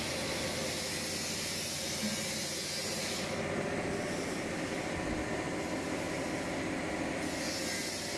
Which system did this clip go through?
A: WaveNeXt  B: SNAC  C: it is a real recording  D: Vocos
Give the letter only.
C